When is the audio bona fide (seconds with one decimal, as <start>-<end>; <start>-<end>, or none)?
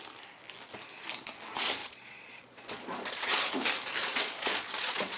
0.0-1.8; 3.5-4.0